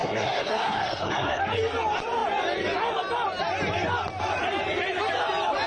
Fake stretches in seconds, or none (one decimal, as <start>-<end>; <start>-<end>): 0.0-1.4